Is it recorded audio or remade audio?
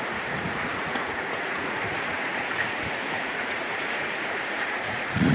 remade